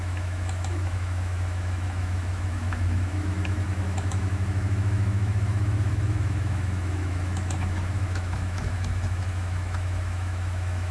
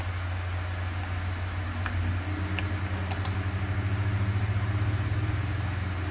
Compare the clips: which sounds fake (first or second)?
first